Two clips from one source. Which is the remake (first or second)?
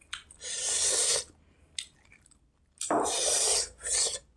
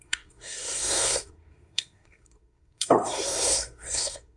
second